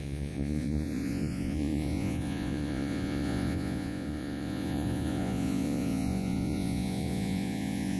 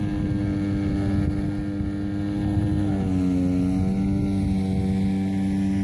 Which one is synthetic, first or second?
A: first